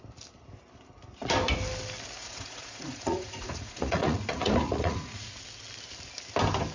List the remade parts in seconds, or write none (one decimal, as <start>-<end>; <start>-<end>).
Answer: 2.2-5.3